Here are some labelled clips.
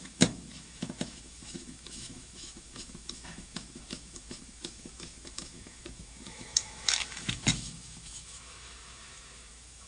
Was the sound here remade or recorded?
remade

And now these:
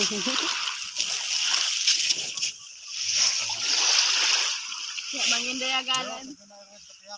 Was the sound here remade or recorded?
recorded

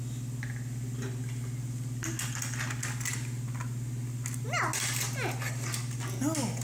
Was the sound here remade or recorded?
recorded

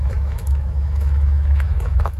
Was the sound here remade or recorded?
remade